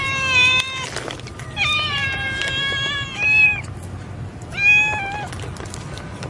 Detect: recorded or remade remade